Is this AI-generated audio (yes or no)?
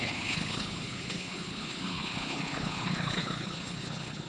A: yes